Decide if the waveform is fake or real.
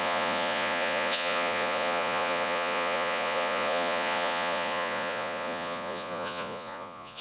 fake